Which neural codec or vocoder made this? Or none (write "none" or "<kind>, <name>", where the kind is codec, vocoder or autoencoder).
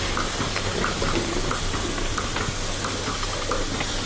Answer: none